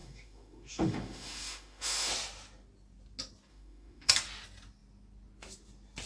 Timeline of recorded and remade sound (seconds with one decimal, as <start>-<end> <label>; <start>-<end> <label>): 0.0-2.1 remade; 2.1-3.5 recorded; 3.5-4.1 remade; 4.1-6.1 recorded